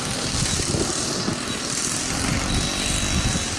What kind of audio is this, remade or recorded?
recorded